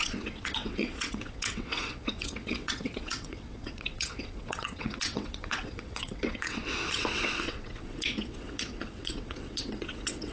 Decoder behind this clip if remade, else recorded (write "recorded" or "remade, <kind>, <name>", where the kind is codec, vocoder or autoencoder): remade, vocoder, WaveNeXt